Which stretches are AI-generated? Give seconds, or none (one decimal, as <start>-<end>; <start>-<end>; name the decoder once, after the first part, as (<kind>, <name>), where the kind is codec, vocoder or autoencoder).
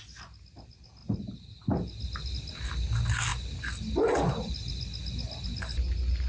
none